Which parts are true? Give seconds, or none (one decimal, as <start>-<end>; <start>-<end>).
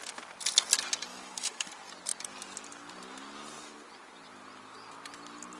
0.0-1.1; 1.7-5.6